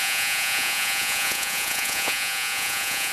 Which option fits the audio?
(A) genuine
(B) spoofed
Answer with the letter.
B